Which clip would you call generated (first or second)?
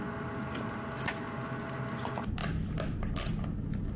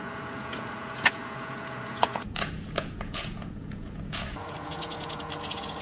second